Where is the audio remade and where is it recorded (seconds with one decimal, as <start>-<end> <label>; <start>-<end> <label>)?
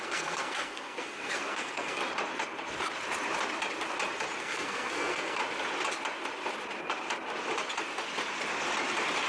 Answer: 0.0-2.0 remade; 2.0-4.4 recorded; 4.4-5.4 remade; 5.4-9.3 recorded